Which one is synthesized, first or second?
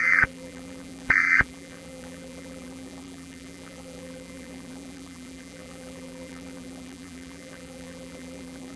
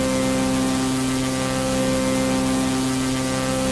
first